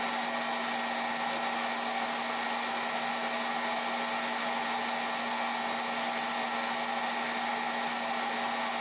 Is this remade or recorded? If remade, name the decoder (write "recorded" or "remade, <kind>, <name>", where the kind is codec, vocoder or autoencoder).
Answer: recorded